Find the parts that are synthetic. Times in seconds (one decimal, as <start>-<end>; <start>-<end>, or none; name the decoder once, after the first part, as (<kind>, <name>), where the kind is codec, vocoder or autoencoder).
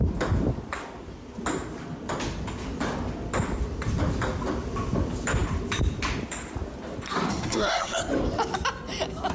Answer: 7.3-8.0 (codec, SNAC)